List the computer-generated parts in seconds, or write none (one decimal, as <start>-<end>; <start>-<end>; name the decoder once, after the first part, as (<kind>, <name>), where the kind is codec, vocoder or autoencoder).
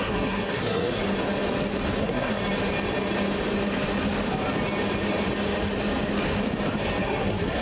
0.0-1.0 (codec, SNAC); 2.0-2.4; 7.0-7.6